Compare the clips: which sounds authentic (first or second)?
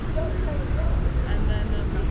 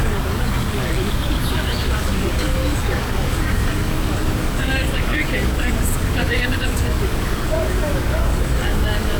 first